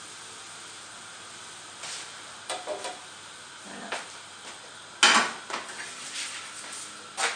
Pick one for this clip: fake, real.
real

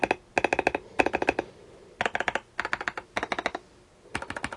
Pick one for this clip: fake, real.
real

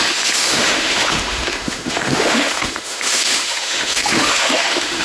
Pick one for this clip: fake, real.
fake